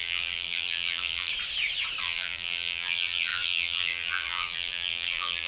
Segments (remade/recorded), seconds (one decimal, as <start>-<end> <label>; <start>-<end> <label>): 0.0-1.3 remade; 1.3-2.0 recorded; 2.0-5.5 remade